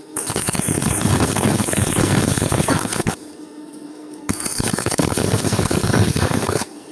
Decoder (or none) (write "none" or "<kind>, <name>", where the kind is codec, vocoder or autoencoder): codec, SNAC